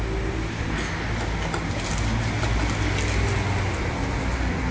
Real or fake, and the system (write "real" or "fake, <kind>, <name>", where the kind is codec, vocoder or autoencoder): real